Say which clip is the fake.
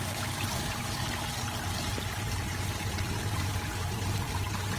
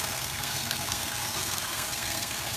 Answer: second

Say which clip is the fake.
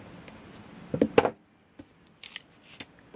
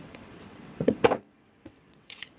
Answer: second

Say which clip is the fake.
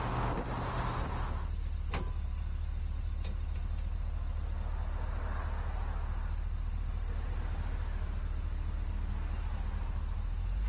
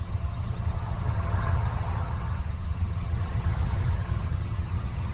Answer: second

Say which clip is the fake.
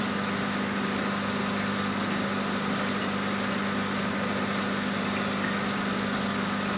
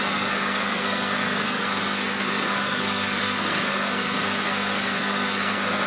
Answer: second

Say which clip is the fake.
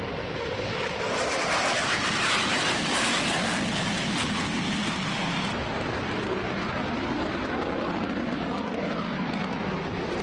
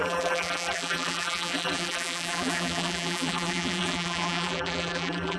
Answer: second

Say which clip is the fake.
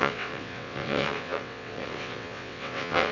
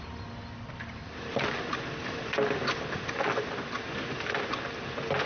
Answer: first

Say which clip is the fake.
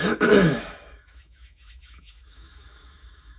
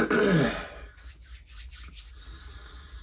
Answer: first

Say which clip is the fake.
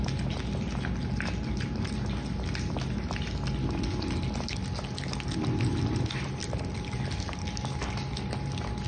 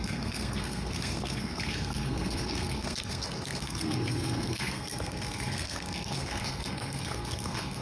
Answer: second